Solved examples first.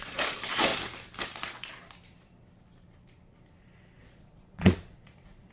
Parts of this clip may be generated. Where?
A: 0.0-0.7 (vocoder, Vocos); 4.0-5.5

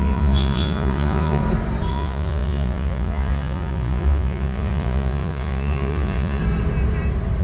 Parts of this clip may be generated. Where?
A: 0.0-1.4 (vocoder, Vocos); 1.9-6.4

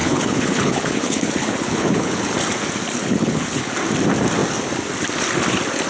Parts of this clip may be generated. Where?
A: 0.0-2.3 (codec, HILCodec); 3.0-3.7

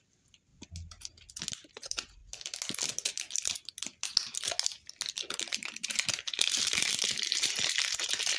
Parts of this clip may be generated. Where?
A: 0.0-0.5 (vocoder, BigVGAN v2); 1.5-2.2; 5.3-8.4

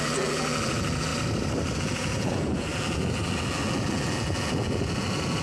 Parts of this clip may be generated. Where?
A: 0.0-1.1 (vocoder, BigVGAN v2); 1.8-5.4

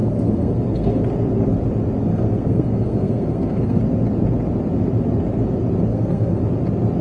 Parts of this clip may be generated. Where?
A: 0.0-1.0 (codec, SNAC); 2.1-3.8; 5.9-6.4

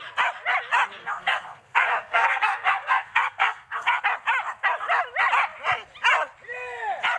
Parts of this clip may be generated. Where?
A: 1.0-4.0 (codec, SNAC)

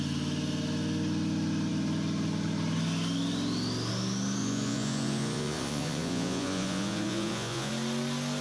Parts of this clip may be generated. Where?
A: 4.4-7.7 (vocoder, Vocos)